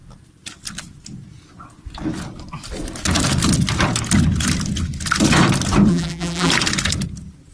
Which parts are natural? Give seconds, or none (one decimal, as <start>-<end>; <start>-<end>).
0.0-5.9; 6.5-7.5